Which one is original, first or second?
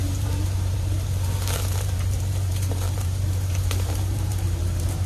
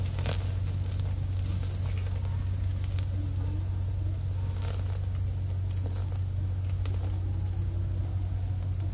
second